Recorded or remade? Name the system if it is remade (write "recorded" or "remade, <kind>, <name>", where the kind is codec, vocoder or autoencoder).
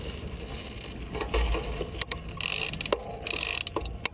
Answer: recorded